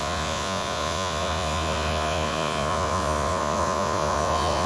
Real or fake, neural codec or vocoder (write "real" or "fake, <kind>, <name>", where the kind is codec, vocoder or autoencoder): fake, vocoder, Vocos